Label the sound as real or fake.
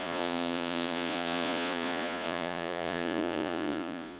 fake